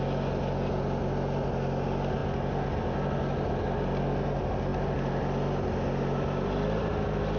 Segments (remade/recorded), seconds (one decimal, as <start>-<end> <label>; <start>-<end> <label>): 0.0-7.4 recorded